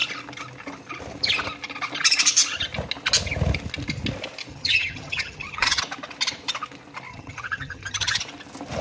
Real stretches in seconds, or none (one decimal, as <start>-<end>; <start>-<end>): 0.0-4.5; 5.8-7.1; 8.2-8.8